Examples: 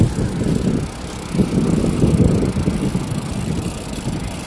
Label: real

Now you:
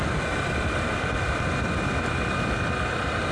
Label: real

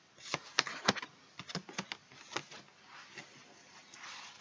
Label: real